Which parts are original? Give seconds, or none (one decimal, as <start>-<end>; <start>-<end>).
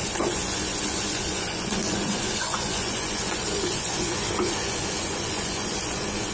none